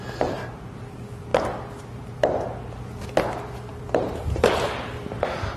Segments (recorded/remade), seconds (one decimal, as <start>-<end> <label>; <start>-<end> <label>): 0.0-3.7 recorded; 3.7-5.0 remade; 5.0-5.6 recorded